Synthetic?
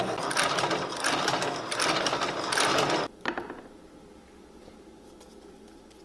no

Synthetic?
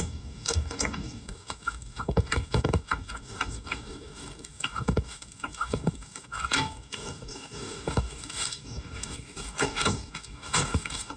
yes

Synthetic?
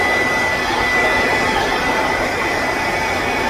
no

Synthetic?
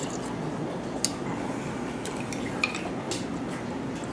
no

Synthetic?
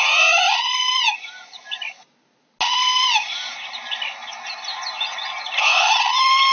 no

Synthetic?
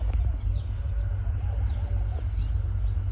no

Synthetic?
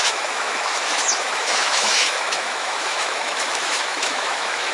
yes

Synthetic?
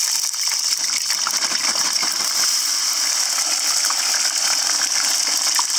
no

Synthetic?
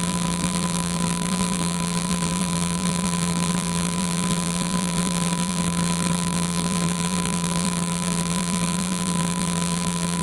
yes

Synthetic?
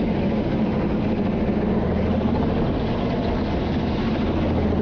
no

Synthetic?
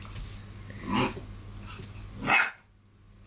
no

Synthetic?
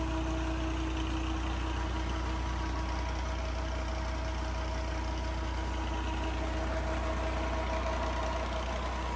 no